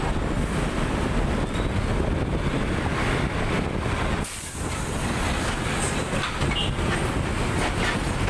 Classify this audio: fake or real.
real